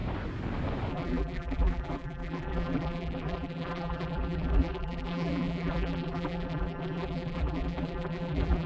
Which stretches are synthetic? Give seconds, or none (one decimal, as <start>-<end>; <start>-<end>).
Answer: 0.9-8.7